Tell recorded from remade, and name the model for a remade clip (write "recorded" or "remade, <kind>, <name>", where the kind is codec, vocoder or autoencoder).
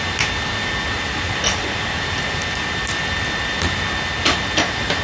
recorded